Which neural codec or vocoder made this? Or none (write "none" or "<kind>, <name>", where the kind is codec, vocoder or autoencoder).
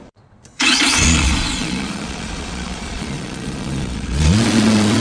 vocoder, Vocos